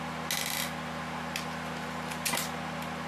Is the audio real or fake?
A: real